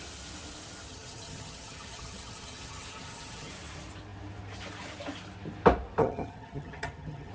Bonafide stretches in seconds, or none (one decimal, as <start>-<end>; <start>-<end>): 0.0-0.9; 3.5-6.0